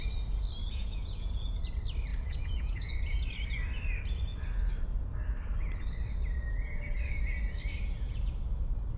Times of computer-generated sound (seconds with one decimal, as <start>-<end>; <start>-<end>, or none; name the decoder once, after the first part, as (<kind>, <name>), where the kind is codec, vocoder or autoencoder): 0.6-1.6 (vocoder, Vocos); 2.1-2.9